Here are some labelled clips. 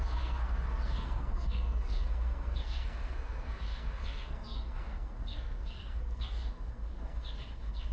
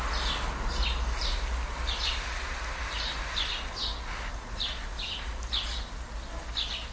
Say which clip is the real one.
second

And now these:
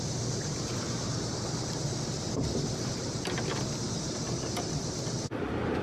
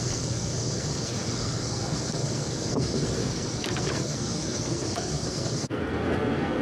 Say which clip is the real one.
first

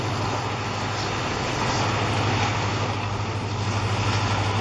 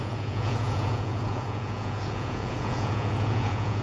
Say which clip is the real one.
first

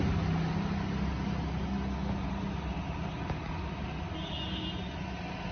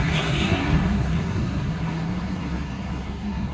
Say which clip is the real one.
first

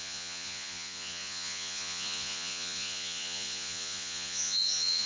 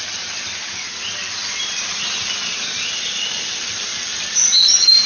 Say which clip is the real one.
second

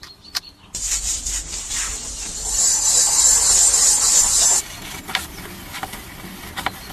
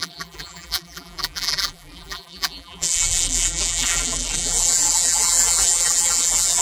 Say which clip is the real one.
first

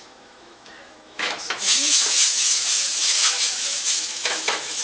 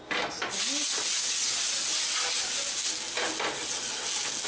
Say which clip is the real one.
second